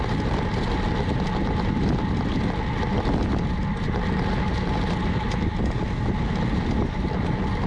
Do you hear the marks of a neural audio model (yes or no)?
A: no